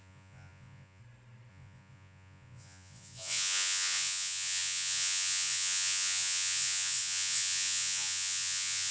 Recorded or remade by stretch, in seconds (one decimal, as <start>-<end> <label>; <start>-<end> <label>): 0.0-1.0 remade; 1.0-1.5 recorded; 1.5-8.9 remade